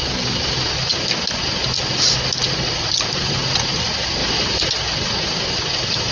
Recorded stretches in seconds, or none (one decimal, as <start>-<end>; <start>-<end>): 0.0-3.1; 4.2-4.7